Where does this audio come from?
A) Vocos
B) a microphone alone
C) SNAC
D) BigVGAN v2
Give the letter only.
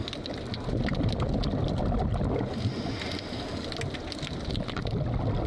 B